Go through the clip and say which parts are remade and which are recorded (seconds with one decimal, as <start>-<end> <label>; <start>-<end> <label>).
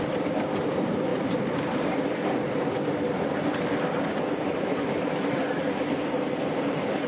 0.0-1.1 recorded; 1.1-5.4 remade; 5.4-7.1 recorded